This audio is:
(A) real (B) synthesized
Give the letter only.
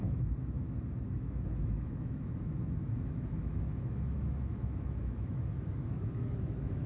B